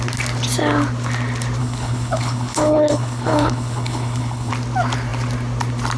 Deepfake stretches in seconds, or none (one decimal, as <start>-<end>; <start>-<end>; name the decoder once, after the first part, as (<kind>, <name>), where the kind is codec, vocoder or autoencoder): 1.6-4.5 (codec, HILCodec)